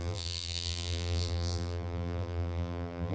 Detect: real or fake fake